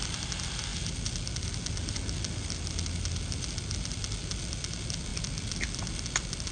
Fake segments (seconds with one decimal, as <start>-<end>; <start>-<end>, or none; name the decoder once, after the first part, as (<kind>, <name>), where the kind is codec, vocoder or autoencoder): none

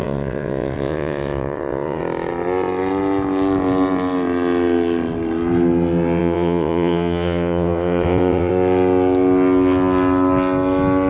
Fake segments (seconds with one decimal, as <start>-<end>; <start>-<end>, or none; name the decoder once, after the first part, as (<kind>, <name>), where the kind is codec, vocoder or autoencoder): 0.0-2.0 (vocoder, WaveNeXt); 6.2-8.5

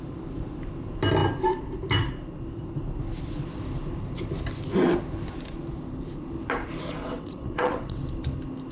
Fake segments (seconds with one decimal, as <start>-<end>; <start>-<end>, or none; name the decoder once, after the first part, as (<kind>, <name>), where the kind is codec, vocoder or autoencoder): 7.0-8.0 (vocoder, WaveNeXt)

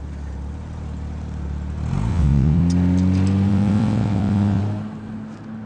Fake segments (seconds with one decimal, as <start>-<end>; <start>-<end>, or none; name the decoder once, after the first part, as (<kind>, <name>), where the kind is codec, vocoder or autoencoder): 2.1-2.6 (vocoder, WaveNeXt); 3.5-4.6

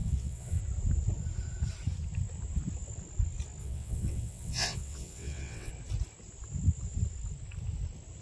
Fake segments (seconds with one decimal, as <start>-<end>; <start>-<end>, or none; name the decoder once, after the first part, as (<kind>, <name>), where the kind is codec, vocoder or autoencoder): 0.0-0.6 (vocoder, WaveNeXt); 3.6-5.7

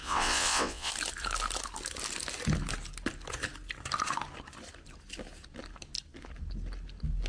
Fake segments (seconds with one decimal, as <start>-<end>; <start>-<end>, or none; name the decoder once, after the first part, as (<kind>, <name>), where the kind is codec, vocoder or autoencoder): 0.0-0.9 (vocoder, WaveNeXt)

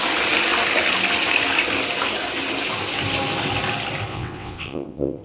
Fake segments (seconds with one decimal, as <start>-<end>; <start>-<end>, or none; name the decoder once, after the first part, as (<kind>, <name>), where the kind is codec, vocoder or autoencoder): 4.1-5.2 (vocoder, WaveNeXt)

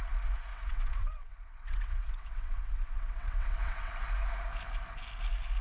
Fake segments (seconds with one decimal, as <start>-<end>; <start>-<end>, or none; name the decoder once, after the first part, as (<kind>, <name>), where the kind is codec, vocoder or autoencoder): 0.5-3.9 (vocoder, WaveNeXt)